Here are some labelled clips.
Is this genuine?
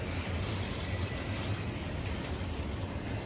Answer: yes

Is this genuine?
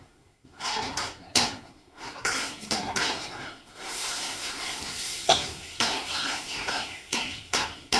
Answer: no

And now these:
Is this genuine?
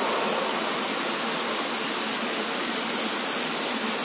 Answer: yes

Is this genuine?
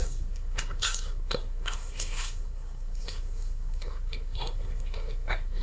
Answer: no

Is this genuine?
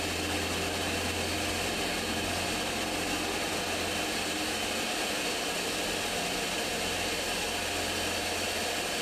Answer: yes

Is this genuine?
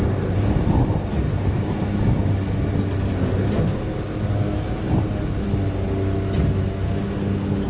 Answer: yes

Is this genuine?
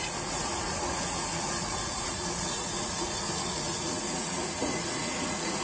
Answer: no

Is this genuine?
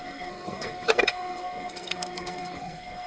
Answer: no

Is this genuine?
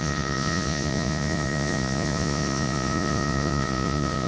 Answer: no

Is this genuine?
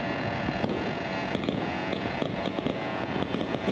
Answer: no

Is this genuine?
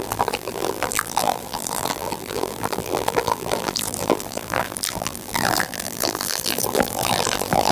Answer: no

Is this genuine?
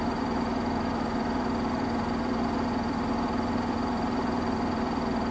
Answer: no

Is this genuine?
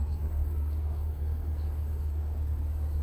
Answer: no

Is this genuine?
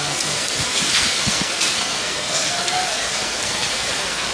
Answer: no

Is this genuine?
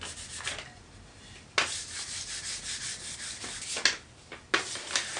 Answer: yes